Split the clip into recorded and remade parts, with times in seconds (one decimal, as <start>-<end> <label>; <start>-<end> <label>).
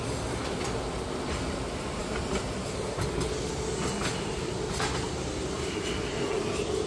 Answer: 0.0-6.9 recorded